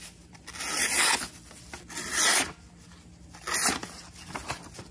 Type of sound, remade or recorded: recorded